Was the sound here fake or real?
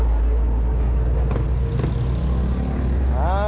real